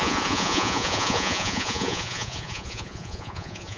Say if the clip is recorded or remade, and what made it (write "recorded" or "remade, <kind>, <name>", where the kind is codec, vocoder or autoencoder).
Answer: remade, vocoder, Vocos